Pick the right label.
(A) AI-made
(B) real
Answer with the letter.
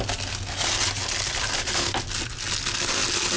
B